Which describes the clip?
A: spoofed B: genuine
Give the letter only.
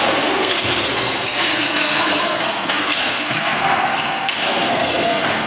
A